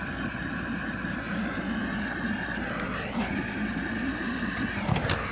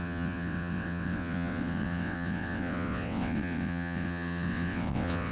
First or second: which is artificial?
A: second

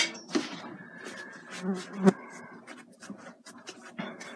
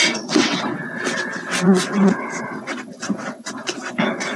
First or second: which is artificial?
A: second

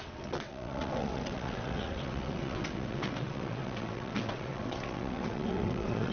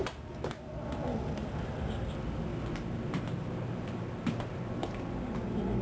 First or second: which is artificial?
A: first